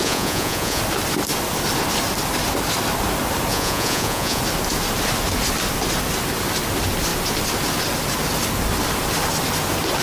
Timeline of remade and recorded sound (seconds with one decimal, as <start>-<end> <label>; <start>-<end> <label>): 0.0-0.8 remade; 0.8-3.5 recorded; 3.5-4.4 remade; 4.4-10.0 recorded